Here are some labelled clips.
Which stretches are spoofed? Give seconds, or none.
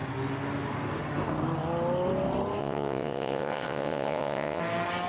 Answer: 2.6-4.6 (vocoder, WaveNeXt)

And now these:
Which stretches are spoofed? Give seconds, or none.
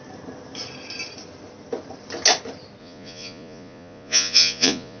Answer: 2.8-5.0 (vocoder, Vocos)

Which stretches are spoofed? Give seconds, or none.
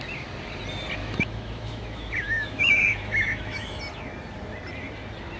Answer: 1.0-3.8 (autoencoder, DAC-VAE)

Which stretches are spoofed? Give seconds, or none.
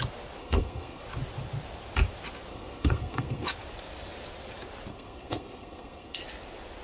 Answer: 0.4-1.0 (codec, SNAC); 2.5-3.5; 4.9-6.2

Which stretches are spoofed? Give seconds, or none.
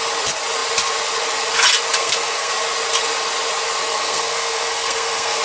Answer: 2.0-2.5 (codec, SNAC); 3.9-5.4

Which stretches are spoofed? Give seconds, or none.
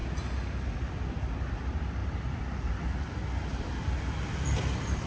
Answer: 2.0-5.1 (vocoder, BigVGAN v2)